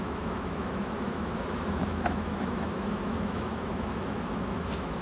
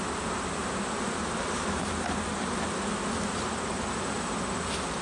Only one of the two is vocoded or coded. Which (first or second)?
first